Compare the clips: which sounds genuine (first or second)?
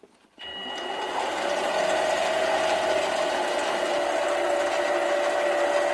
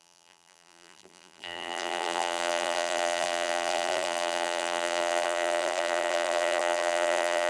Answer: first